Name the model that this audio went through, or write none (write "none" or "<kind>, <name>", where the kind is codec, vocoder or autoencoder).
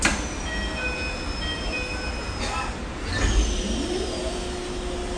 none